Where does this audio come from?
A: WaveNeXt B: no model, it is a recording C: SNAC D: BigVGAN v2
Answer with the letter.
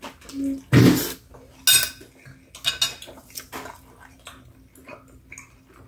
B